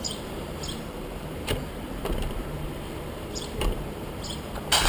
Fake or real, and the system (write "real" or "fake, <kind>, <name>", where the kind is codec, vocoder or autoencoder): fake, vocoder, BigVGAN v2